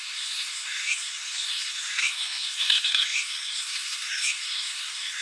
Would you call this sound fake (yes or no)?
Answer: yes